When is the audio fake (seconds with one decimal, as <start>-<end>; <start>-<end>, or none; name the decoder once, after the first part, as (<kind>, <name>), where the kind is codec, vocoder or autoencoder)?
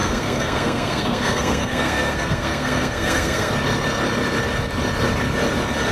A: 0.0-3.5 (codec, SNAC)